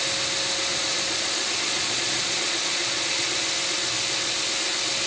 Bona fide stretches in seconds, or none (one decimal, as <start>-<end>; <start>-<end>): 0.0-0.7; 3.3-5.1